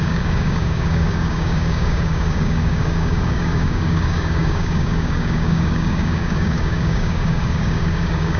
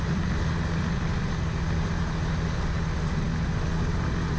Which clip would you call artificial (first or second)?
first